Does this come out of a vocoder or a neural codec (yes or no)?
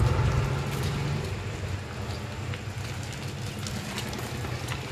no